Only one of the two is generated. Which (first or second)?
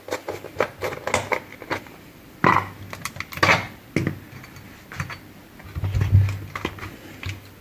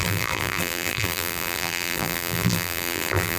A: second